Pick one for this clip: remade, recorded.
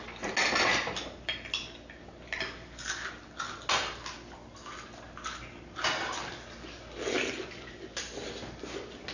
recorded